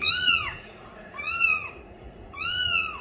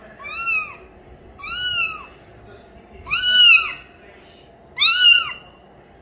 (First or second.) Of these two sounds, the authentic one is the second